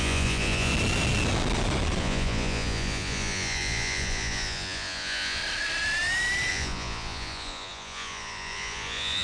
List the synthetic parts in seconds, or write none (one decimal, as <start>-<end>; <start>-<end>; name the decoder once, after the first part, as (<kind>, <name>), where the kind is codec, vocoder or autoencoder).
0.0-0.7 (vocoder, Vocos); 2.0-5.4; 6.5-9.2